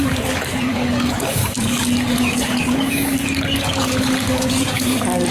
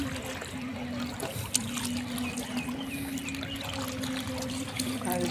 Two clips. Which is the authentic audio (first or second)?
second